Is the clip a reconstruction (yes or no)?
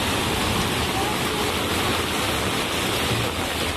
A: no